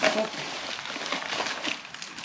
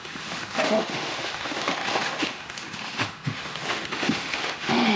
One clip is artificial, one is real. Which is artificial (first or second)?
second